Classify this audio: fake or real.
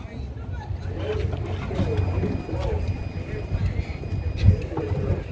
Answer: real